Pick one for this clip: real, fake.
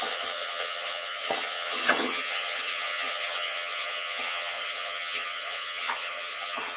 fake